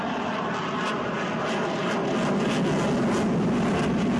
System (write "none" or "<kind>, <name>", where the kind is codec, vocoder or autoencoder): none